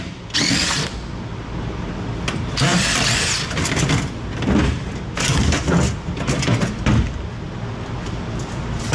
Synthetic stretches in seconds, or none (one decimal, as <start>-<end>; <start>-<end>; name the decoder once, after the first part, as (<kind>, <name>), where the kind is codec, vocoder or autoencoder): none